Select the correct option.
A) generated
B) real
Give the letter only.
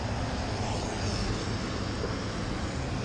B